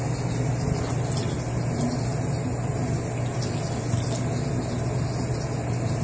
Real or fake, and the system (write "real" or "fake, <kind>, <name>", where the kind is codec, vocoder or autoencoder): real